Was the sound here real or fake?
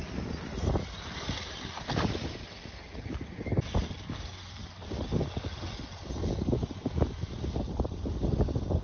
real